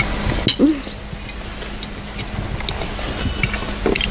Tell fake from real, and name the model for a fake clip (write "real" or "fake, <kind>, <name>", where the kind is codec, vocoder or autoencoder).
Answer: real